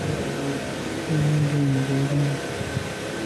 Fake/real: real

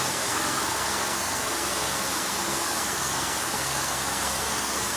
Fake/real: fake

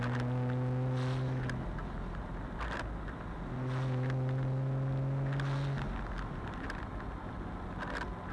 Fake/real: real